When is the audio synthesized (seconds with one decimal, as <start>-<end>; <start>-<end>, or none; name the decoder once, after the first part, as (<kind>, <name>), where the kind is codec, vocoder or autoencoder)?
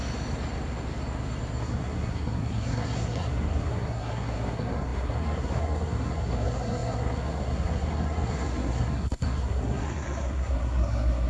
1.6-11.3 (codec, SNAC)